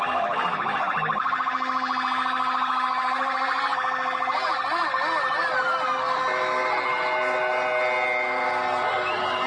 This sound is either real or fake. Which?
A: real